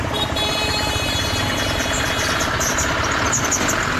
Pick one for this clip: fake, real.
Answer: fake